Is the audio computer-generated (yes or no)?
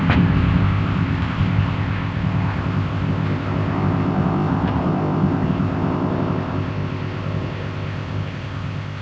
yes